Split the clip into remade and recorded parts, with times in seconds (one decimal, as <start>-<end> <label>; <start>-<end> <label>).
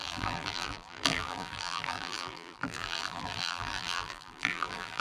0.0-5.0 remade